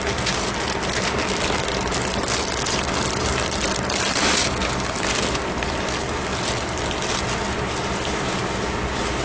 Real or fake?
real